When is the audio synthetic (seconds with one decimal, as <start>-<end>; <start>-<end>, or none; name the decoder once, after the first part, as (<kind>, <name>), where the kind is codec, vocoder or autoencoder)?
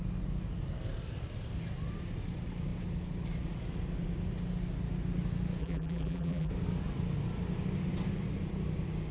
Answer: 5.6-6.5 (vocoder, BigVGAN v2)